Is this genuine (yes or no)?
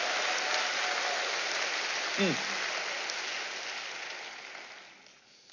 yes